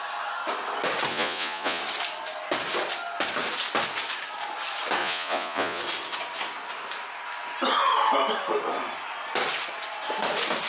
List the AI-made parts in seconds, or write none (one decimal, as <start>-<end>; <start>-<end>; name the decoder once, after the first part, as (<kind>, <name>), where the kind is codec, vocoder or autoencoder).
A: 1.1-1.8 (vocoder, Vocos); 5.0-5.8